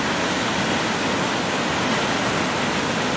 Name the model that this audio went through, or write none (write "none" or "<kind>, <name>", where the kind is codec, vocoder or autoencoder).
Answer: none